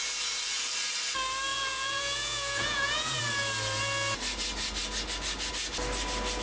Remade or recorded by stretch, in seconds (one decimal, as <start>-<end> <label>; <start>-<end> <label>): 0.0-1.5 recorded; 1.5-3.2 remade; 3.2-6.4 recorded